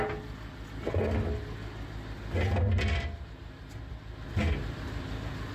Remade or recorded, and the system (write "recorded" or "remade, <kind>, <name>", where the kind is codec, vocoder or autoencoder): recorded